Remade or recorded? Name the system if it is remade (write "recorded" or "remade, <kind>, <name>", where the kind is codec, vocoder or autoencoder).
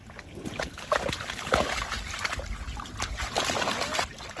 recorded